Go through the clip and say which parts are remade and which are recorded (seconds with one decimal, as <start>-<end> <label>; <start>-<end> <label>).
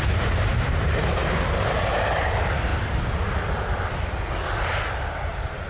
0.0-1.2 remade; 1.2-1.9 recorded; 1.9-2.7 remade; 2.7-5.0 recorded; 5.0-5.7 remade